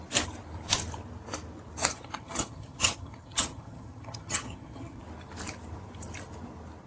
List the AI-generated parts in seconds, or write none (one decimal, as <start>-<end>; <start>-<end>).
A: 1.9-5.0